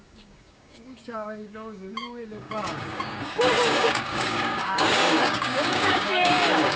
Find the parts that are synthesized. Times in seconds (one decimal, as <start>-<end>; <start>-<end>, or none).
0.0-6.8